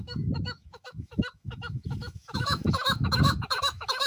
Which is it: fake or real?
fake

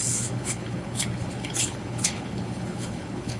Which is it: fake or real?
fake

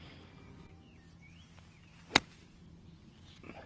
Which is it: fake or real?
real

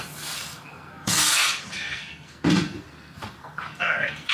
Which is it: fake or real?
fake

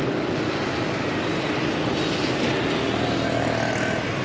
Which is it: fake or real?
real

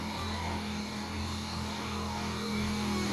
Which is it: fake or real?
fake